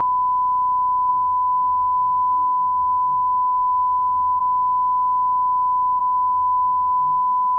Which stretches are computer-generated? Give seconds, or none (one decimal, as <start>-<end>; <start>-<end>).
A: 1.1-4.4; 6.0-7.6